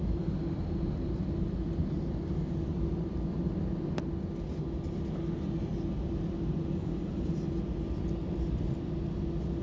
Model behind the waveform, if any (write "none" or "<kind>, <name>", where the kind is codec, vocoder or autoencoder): none